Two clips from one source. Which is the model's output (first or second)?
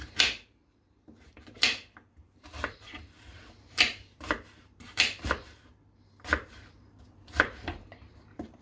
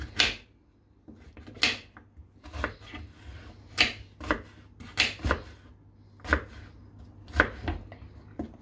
first